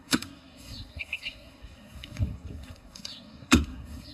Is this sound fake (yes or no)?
yes